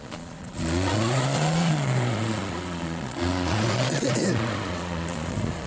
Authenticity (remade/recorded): remade